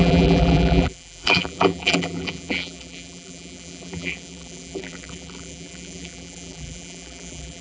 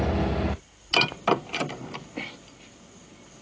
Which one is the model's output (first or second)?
first